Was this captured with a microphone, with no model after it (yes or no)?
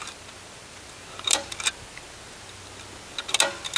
yes